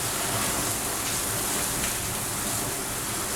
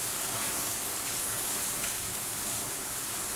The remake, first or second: second